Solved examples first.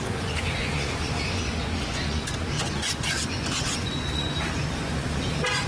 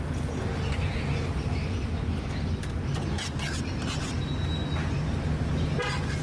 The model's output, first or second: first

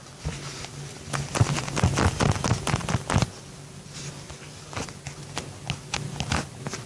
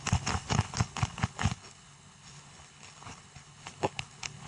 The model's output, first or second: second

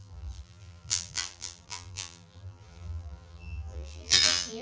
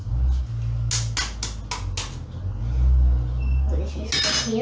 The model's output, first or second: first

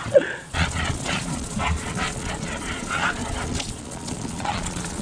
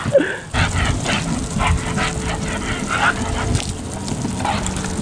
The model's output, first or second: first